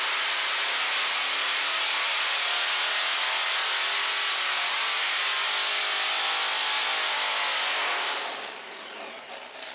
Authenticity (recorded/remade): recorded